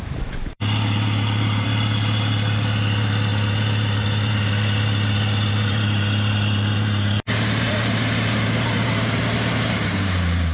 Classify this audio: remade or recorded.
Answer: remade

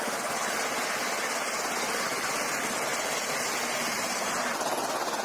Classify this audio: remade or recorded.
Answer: recorded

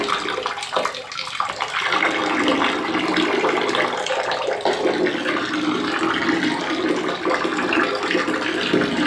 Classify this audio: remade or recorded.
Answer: recorded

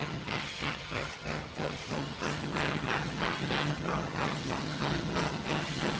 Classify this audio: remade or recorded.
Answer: remade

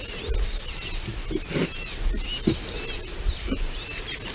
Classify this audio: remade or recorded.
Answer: recorded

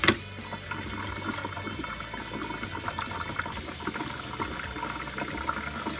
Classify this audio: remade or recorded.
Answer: recorded